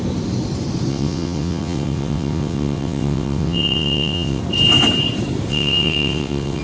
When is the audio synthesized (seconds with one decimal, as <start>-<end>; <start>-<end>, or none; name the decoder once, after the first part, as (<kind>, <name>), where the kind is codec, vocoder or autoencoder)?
0.9-4.4 (vocoder, WaveNeXt); 5.5-6.6